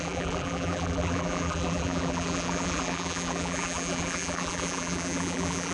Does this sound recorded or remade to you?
remade